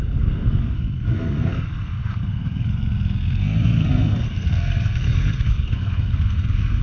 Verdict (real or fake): fake